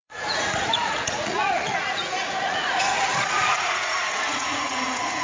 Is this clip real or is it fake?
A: fake